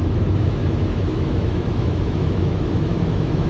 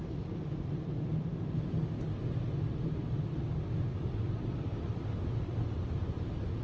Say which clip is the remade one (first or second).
first